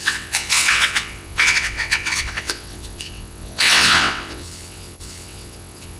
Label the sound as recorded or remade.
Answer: remade